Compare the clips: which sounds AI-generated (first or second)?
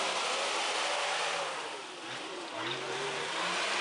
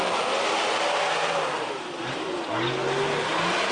first